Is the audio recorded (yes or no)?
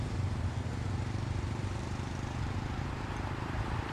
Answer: no